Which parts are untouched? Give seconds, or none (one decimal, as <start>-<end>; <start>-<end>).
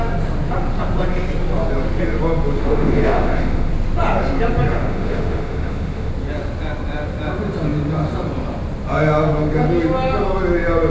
0.0-2.6; 3.7-4.8; 6.1-10.9